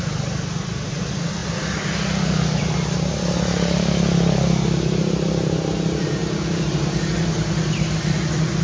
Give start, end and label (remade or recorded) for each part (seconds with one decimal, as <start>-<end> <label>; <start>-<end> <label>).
0.0-8.6 recorded